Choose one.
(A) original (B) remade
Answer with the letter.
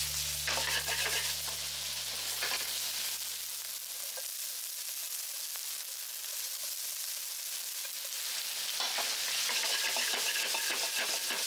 A